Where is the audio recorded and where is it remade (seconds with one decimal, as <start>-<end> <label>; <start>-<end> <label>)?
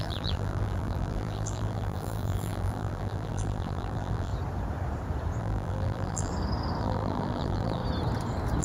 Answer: 0.0-4.3 remade; 4.3-5.4 recorded; 5.4-6.3 remade; 6.3-6.8 recorded; 6.8-7.8 remade; 7.8-8.6 recorded